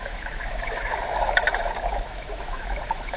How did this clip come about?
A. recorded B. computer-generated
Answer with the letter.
B